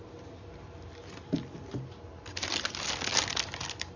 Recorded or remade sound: recorded